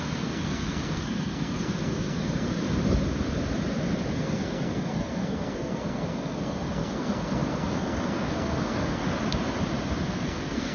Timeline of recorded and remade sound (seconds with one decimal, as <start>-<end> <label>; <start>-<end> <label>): 0.0-2.6 remade; 2.6-4.1 recorded; 4.1-9.0 remade; 9.0-10.0 recorded; 10.0-10.7 remade